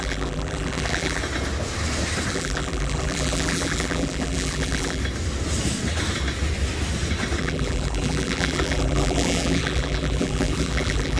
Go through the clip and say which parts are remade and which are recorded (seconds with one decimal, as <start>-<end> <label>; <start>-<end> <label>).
0.0-1.2 remade; 1.2-2.3 recorded; 2.3-5.0 remade; 5.0-7.4 recorded; 7.4-11.2 remade